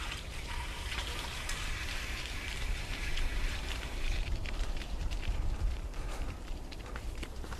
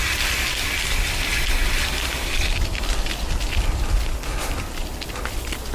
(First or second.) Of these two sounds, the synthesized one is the first